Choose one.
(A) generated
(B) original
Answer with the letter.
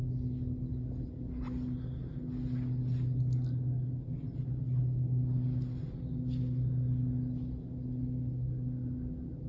B